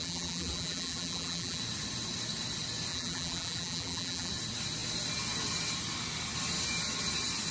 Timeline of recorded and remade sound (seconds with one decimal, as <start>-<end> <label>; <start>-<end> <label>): 0.0-1.6 remade; 1.6-2.9 recorded; 2.9-4.3 remade; 4.3-7.5 recorded